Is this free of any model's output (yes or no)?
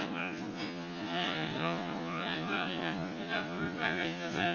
no